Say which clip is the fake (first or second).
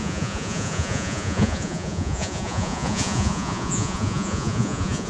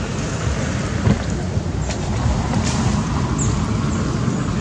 first